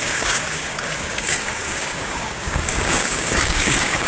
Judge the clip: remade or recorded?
remade